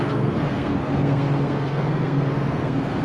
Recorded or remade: remade